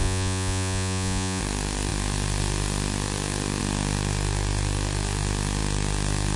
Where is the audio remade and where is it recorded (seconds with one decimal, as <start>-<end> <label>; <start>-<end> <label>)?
0.0-1.4 remade; 1.4-6.4 recorded